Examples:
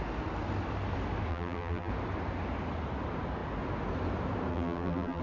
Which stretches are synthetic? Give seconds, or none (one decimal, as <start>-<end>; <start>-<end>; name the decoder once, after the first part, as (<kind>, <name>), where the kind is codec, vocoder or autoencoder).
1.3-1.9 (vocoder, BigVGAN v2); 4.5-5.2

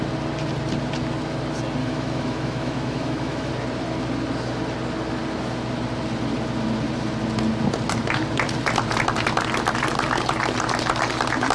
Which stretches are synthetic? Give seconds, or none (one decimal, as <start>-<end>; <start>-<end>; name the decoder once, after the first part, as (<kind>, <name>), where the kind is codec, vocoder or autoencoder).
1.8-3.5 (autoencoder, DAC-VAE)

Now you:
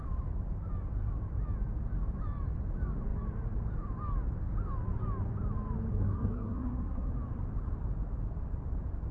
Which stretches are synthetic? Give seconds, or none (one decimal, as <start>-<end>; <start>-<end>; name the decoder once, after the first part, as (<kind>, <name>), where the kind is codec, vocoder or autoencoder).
5.9-7.1 (codec, SNAC)